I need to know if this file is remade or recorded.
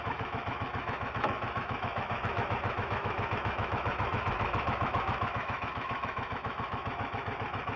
remade